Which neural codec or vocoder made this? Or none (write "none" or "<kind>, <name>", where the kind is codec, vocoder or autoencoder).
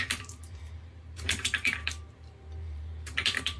vocoder, BigVGAN v2